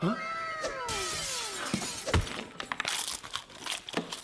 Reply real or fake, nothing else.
real